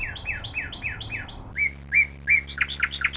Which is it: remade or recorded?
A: recorded